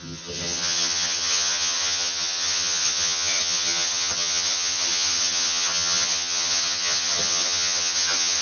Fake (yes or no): yes